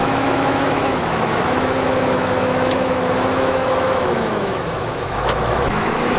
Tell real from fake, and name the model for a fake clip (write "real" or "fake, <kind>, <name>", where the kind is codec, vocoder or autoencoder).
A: fake, autoencoder, DAC-VAE